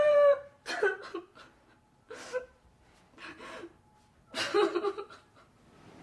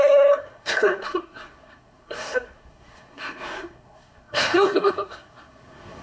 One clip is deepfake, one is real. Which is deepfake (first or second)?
second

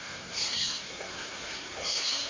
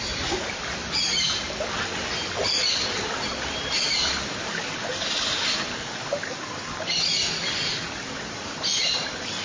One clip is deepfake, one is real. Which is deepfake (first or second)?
first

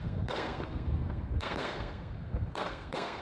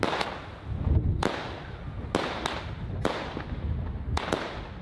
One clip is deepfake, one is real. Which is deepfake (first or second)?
first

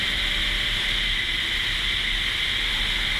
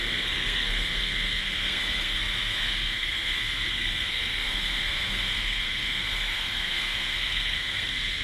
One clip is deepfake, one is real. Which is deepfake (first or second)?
second